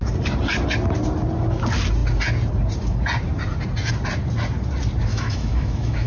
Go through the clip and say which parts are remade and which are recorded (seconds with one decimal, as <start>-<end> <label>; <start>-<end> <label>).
0.0-5.1 recorded; 5.1-6.1 remade